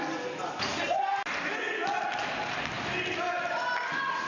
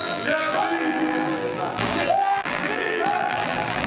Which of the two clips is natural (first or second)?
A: first